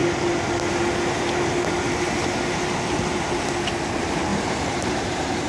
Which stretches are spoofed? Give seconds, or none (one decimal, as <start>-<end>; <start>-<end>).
4.3-5.5